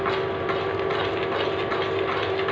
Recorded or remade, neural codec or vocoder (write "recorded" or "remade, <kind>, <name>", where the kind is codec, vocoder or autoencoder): recorded